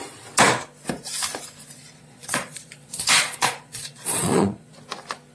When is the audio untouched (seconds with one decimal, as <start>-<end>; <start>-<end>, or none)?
0.0-1.6; 4.8-5.3